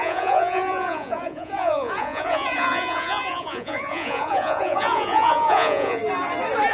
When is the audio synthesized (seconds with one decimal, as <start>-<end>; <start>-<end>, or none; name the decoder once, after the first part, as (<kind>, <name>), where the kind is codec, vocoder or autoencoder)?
0.0-6.0 (vocoder, Vocos)